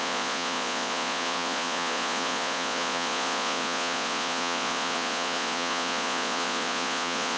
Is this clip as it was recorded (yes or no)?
no